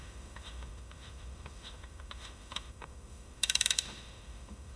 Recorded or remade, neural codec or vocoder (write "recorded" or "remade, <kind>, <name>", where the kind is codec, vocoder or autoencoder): remade, autoencoder, DAC-VAE